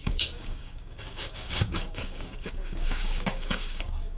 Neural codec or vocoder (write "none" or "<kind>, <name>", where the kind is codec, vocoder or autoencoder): codec, DAC